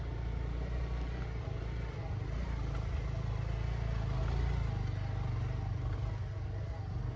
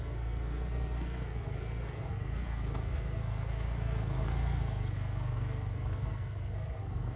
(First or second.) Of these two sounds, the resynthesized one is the second